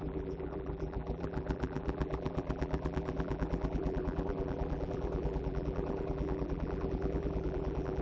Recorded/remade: remade